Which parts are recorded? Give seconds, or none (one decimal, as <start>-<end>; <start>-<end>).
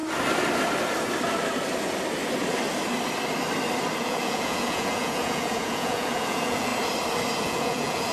0.0-4.0; 6.7-7.4